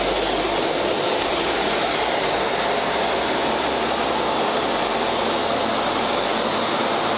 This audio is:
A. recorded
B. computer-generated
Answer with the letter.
A